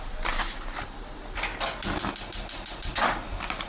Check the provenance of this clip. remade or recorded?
remade